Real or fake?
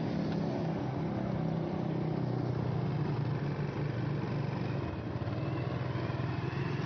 real